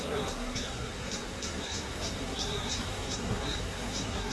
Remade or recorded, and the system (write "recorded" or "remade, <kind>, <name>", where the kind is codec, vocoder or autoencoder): remade, codec, SNAC